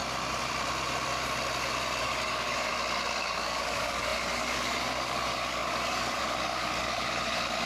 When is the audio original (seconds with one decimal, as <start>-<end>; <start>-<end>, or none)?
0.0-2.0; 2.7-3.2